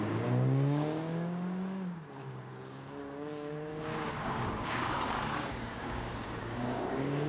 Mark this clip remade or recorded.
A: remade